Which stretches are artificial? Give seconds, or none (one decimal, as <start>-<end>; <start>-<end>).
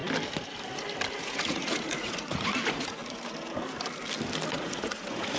1.2-3.0; 4.5-5.4